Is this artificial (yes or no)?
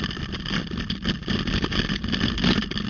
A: no